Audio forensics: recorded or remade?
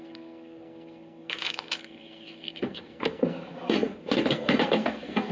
remade